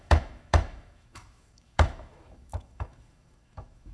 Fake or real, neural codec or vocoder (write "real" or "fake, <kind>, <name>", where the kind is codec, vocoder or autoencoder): fake, autoencoder, DAC-VAE